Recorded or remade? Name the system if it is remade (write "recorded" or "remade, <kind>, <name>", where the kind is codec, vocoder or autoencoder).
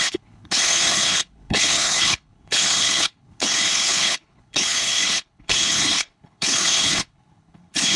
remade, codec, HILCodec